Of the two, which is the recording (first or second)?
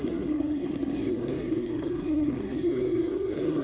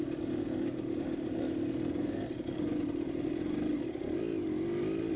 second